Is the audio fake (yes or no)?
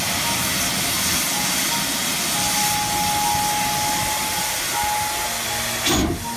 no